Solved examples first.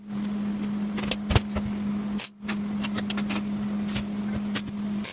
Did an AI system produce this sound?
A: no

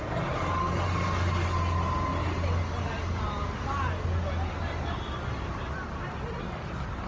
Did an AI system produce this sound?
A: no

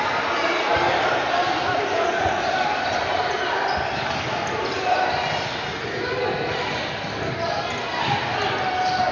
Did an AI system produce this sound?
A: no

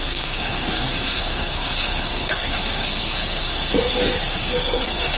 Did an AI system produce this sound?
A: yes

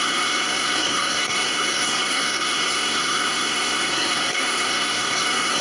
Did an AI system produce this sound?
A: yes